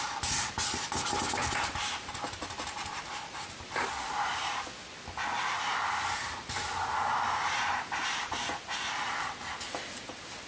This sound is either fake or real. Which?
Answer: real